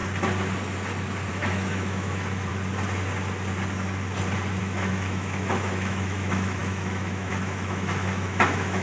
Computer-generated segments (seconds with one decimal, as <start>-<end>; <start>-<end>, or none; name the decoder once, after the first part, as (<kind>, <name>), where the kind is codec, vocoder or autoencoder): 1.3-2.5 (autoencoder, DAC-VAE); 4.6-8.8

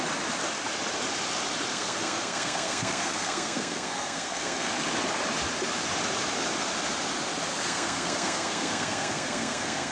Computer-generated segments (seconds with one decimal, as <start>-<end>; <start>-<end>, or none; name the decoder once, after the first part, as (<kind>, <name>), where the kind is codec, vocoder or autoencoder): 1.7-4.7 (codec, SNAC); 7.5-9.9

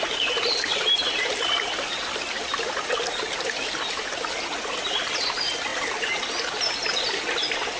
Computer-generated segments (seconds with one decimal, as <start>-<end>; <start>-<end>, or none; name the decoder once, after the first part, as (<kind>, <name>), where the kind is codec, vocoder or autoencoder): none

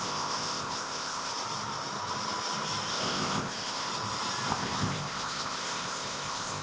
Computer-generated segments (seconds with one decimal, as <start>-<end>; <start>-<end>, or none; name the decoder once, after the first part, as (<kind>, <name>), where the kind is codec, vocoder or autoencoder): 0.0-1.3 (codec, ZipCodec); 2.9-3.9; 4.5-6.6

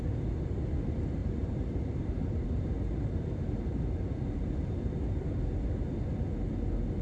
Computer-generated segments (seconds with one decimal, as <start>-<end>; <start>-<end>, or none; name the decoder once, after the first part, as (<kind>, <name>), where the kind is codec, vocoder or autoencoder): 1.2-5.4 (vocoder, BigVGAN v2)

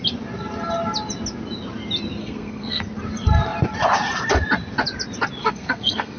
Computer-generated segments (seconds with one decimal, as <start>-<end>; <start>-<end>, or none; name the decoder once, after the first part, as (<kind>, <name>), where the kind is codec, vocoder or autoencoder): 2.2-2.8 (codec, SNAC); 5.4-6.2

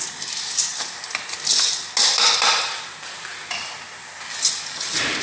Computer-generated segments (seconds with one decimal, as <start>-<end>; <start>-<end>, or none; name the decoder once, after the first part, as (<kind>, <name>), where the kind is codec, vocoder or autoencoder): 0.0-0.7 (vocoder, BigVGAN v2); 2.0-5.2